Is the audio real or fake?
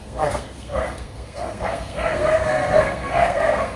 fake